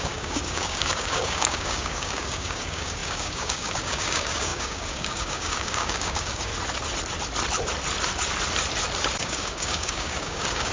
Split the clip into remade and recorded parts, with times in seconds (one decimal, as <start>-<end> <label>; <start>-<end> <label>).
0.0-6.5 remade; 6.5-9.2 recorded; 9.2-10.7 remade